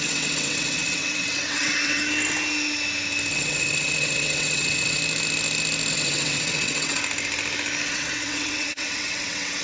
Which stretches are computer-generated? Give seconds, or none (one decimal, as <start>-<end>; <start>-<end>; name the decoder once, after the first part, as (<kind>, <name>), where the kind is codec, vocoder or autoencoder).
0.0-2.0 (vocoder, WaveNeXt); 3.3-5.0; 5.9-7.0; 7.9-9.6